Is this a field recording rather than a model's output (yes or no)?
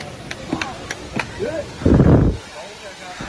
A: yes